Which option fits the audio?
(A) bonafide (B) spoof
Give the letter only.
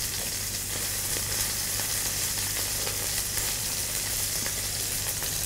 B